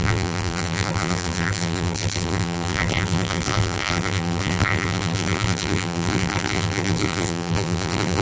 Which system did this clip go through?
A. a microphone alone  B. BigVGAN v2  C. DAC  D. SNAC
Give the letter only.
B